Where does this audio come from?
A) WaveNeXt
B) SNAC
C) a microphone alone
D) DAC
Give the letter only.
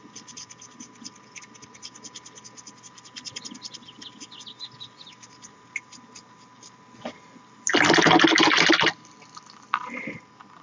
C